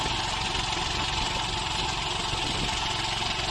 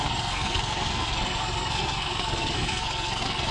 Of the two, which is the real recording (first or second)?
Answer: first